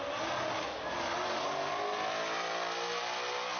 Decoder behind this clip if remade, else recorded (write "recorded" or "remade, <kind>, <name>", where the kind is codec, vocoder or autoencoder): recorded